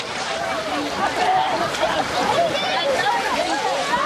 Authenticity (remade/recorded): remade